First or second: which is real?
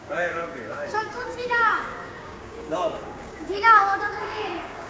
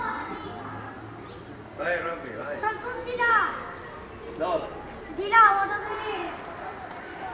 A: second